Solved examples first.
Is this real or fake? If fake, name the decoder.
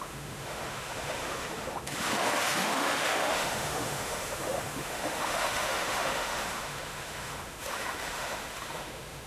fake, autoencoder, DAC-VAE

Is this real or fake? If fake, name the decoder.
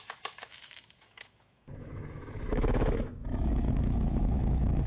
fake, autoencoder, DAC-VAE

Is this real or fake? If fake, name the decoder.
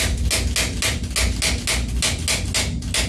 real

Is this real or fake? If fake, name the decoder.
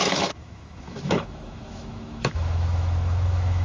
fake, autoencoder, DAC-VAE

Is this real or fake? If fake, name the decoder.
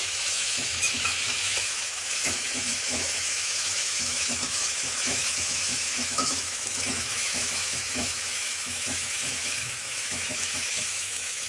fake, autoencoder, DAC-VAE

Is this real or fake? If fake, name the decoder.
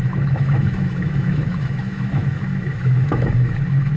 fake, autoencoder, DAC-VAE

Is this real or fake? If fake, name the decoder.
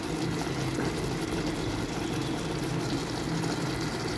real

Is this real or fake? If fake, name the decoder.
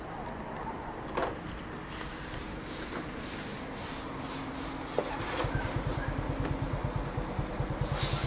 real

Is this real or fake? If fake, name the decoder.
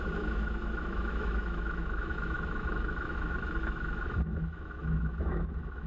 fake, autoencoder, DAC-VAE